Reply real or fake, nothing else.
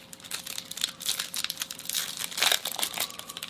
real